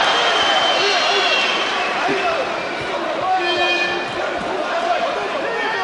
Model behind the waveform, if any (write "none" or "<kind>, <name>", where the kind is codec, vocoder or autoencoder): none